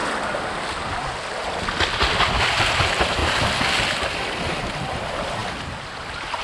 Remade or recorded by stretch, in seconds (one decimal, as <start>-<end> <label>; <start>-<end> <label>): 0.0-2.4 recorded; 2.4-3.2 remade; 3.2-4.7 recorded; 4.7-5.4 remade; 5.4-6.4 recorded